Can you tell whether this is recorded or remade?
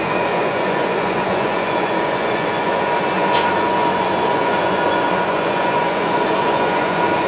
remade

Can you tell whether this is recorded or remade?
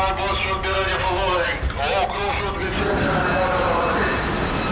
recorded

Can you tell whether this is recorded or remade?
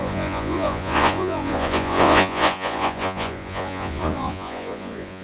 remade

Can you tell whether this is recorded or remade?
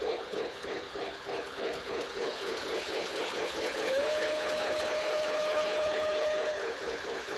remade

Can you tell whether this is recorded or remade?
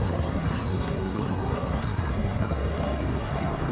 remade